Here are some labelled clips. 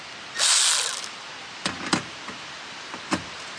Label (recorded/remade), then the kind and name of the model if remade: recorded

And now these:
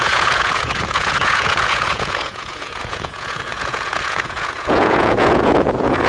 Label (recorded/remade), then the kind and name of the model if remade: remade, vocoder, Vocos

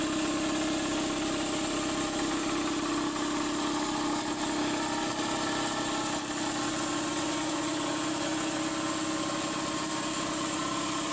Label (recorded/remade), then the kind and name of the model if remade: recorded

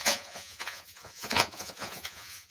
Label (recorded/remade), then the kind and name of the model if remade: remade, vocoder, Vocos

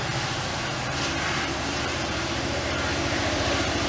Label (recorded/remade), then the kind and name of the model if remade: remade, vocoder, BigVGAN v2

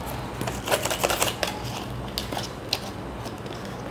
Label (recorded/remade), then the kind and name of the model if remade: recorded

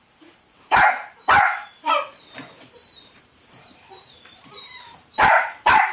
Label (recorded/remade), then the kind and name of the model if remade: remade, vocoder, BigVGAN v2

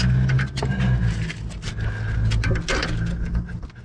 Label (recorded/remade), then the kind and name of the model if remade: recorded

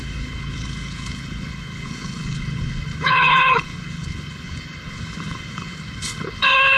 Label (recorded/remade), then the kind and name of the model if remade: remade, codec, HILCodec